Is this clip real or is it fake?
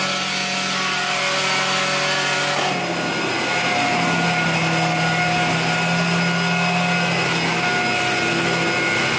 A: real